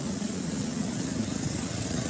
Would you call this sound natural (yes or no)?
no